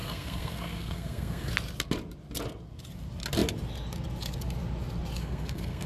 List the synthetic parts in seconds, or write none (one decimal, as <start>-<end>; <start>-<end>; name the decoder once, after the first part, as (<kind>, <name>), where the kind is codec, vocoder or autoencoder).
0.0-1.5 (codec, SNAC); 5.2-5.9